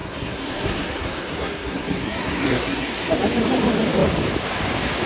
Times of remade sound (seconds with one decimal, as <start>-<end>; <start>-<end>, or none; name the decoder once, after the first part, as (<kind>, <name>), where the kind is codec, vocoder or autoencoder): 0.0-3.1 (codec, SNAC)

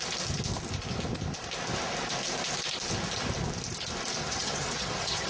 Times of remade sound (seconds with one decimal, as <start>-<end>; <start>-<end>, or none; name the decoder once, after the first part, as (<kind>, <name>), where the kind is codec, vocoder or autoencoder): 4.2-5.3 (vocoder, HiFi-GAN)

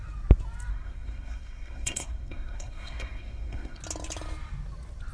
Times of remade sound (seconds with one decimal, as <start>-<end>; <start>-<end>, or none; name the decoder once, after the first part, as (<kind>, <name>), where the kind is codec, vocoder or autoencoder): 0.7-3.8 (codec, SNAC)